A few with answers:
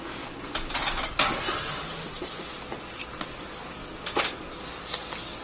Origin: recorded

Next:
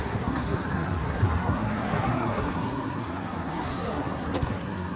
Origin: remade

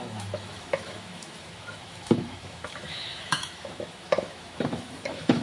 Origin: remade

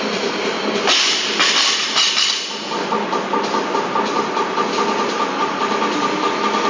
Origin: recorded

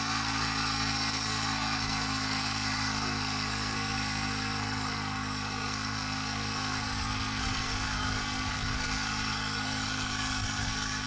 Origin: remade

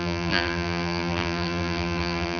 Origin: remade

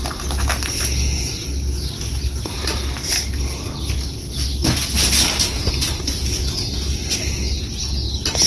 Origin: recorded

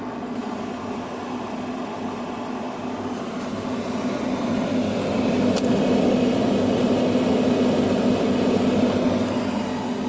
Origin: recorded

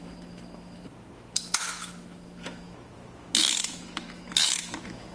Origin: remade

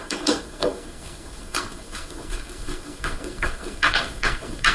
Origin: remade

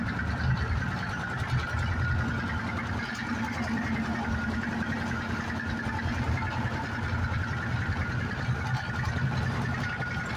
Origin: recorded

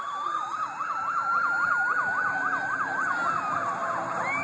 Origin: recorded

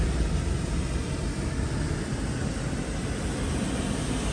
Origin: recorded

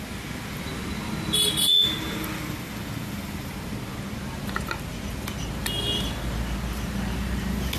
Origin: recorded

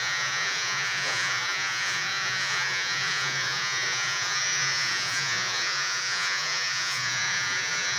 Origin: remade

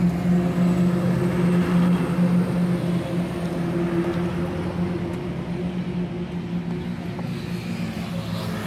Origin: recorded